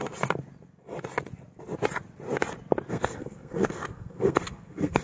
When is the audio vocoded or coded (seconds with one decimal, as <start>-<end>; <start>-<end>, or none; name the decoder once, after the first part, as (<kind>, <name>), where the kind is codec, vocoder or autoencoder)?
2.9-5.0 (codec, SNAC)